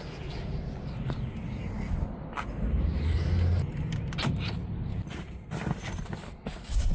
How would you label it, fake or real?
real